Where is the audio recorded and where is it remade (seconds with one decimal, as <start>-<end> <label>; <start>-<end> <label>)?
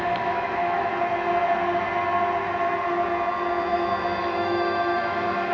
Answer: 0.0-0.9 remade; 0.9-4.2 recorded; 4.2-5.5 remade